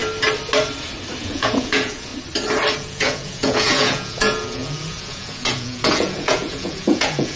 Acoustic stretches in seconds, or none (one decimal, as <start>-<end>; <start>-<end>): 0.0-1.2; 2.1-2.7